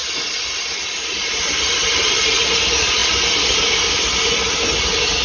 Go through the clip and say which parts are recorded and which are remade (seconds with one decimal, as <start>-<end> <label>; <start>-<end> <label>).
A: 0.0-2.2 remade; 2.2-3.0 recorded; 3.0-3.6 remade; 3.6-5.2 recorded